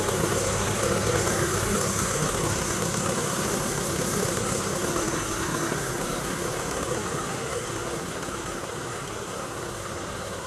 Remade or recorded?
remade